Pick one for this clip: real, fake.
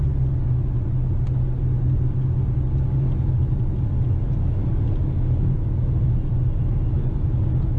real